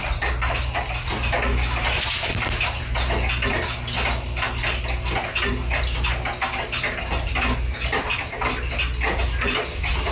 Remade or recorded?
recorded